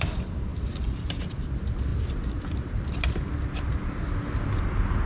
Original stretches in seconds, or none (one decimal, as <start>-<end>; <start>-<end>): 0.0-5.1